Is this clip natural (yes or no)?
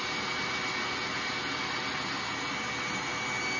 yes